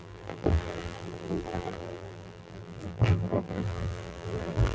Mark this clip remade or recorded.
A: remade